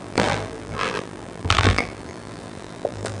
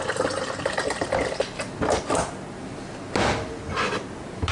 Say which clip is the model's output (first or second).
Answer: first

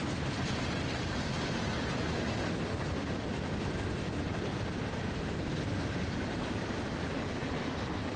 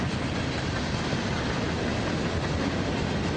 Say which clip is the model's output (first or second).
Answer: first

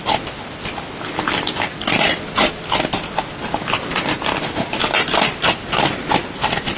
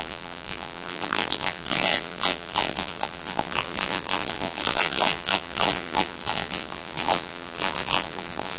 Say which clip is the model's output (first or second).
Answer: second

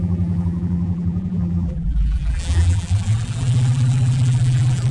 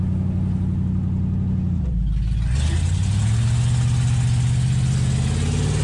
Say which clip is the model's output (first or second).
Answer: first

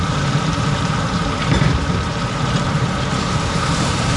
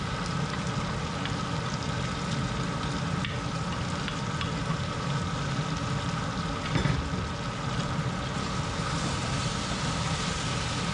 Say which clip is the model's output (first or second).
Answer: first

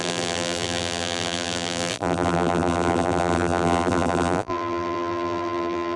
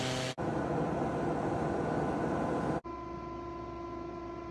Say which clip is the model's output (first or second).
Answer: first